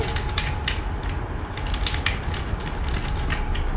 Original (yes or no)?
yes